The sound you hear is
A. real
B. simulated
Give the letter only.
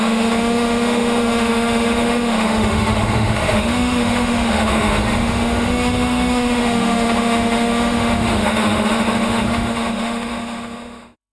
B